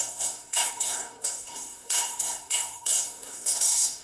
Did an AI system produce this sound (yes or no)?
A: yes